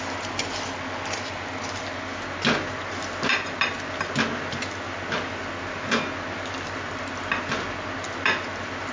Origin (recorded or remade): recorded